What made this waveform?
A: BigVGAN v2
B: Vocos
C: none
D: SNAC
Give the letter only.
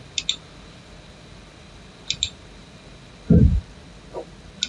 C